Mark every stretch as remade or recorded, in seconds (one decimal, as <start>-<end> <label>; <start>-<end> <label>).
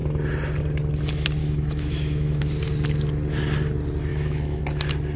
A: 0.0-1.4 recorded; 1.4-2.4 remade; 2.4-4.1 recorded; 4.1-4.6 remade; 4.6-5.2 recorded